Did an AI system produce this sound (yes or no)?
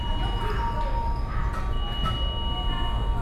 no